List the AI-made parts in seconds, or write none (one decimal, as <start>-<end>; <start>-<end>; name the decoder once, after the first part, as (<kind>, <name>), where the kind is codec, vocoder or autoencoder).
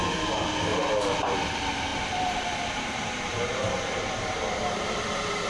0.7-1.5 (vocoder, BigVGAN v2); 1.9-5.5